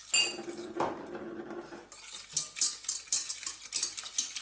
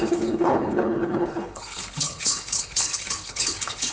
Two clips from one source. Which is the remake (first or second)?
second